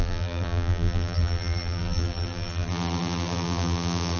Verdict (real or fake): fake